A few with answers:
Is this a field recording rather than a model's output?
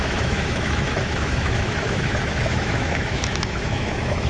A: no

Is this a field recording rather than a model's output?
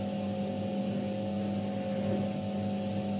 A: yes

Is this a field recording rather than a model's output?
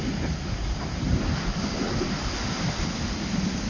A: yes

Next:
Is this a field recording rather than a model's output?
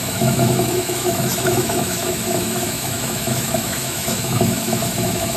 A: no